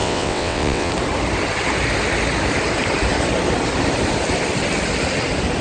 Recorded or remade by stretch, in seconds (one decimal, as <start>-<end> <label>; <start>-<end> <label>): 0.0-0.9 remade; 0.9-5.6 recorded